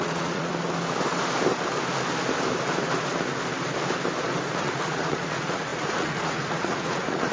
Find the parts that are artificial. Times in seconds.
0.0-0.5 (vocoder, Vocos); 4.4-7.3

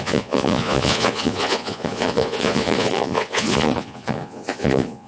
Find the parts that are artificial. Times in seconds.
0.0-5.1 (vocoder, Vocos)

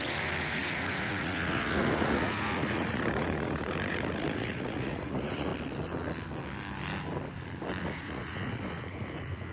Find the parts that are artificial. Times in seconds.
0.0-5.5 (vocoder, Vocos); 7.8-9.5

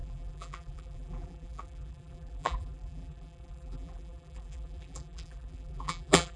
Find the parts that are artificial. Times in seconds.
0.0-6.4 (vocoder, BigVGAN v2)

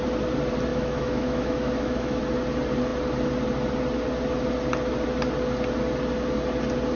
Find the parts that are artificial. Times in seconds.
0.7-2.2 (autoencoder, DAC-VAE)